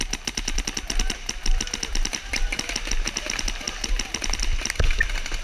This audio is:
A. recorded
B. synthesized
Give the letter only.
A